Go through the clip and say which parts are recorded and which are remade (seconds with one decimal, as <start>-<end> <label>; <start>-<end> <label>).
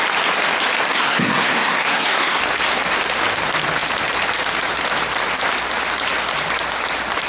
0.0-0.9 recorded; 0.9-2.4 remade; 2.4-7.3 recorded